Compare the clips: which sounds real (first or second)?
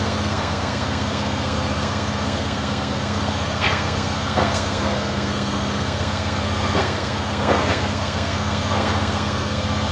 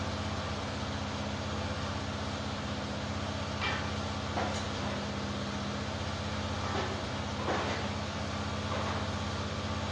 second